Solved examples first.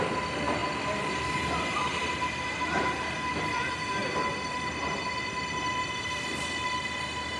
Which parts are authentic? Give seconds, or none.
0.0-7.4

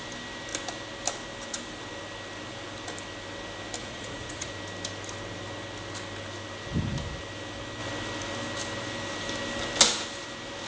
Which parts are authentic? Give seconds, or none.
0.0-3.8; 4.5-10.7

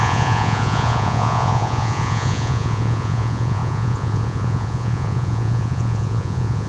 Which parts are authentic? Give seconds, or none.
none

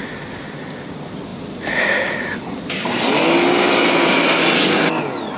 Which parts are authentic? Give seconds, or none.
0.0-5.4

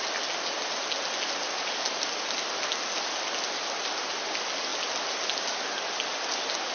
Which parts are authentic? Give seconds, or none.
0.0-6.7

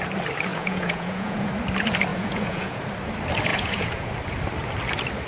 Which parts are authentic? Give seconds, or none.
0.0-0.5; 1.5-2.1; 2.8-3.5; 4.1-5.3